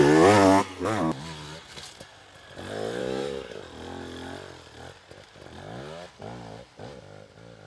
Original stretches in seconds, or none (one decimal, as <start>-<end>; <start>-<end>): 0.0-3.0; 3.6-7.7